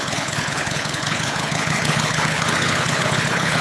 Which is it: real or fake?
fake